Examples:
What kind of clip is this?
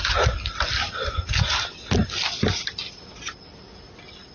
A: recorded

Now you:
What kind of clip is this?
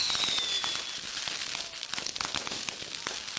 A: remade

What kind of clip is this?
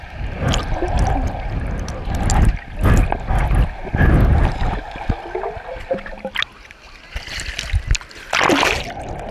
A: recorded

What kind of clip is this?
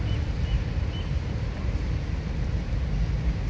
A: recorded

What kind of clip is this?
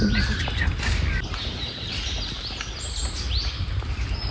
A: recorded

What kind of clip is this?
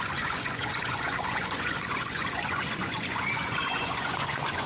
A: remade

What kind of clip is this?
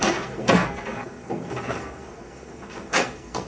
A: remade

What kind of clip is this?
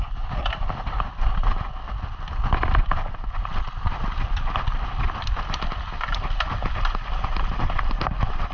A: recorded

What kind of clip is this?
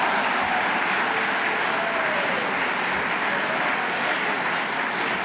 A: recorded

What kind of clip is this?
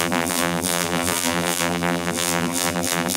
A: remade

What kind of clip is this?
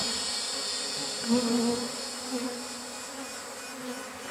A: recorded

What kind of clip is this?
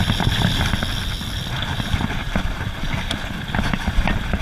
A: recorded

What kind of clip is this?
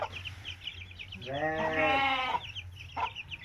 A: recorded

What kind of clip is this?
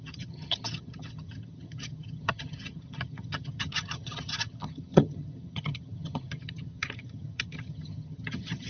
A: remade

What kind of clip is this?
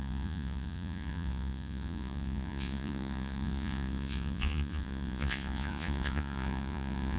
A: remade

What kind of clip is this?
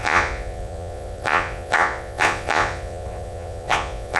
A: remade